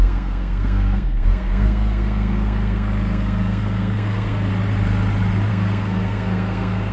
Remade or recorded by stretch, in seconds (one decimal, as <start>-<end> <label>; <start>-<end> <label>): 0.0-4.5 remade; 4.5-5.5 recorded; 5.5-6.9 remade